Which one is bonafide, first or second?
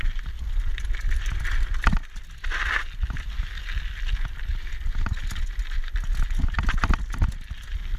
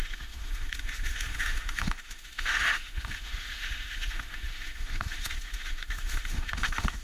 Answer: first